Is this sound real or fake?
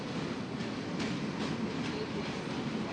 real